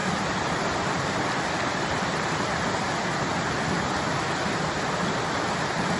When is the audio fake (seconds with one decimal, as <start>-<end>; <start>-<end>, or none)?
none